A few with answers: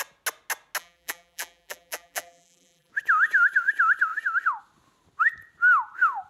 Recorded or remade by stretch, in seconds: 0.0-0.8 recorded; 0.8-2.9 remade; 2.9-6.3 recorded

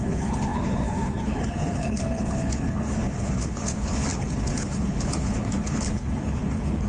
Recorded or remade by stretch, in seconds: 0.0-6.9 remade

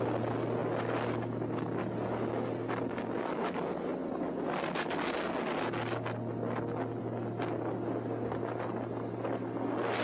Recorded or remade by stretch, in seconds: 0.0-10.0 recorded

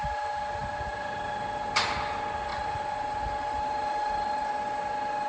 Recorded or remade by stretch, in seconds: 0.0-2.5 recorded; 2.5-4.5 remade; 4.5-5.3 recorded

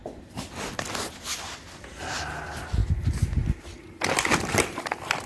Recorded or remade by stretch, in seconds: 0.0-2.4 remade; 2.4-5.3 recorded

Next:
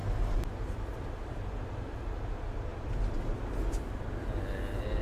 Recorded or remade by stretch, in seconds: 0.0-5.0 recorded